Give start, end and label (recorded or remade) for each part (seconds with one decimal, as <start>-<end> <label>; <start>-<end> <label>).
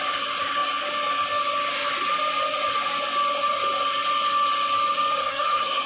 0.0-5.2 recorded; 5.2-5.9 remade